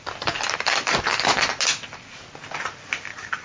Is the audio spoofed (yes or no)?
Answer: no